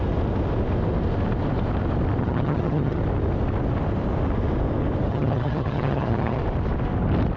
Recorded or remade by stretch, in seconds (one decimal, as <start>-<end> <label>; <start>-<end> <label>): 0.0-2.2 recorded; 2.2-3.0 remade; 3.0-5.1 recorded; 5.1-6.4 remade; 6.4-7.4 recorded